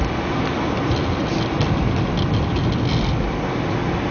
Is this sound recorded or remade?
recorded